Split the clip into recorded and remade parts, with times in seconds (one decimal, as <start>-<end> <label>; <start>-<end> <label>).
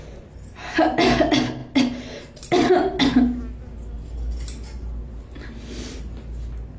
0.0-6.8 recorded